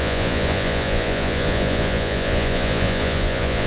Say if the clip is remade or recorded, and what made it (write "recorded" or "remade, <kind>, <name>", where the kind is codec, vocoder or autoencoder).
remade, vocoder, Vocos